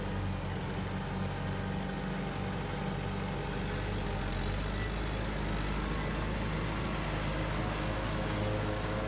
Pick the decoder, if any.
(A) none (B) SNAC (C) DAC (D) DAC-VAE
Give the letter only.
A